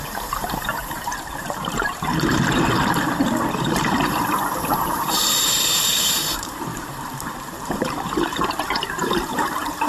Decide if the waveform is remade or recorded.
remade